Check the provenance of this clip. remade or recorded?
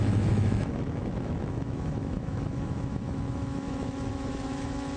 remade